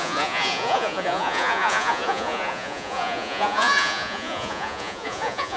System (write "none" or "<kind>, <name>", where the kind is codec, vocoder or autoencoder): vocoder, Vocos